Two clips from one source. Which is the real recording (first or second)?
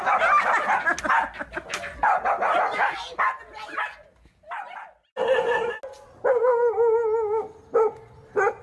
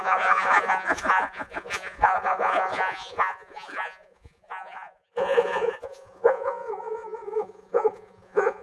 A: first